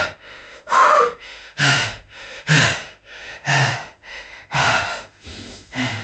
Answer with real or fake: fake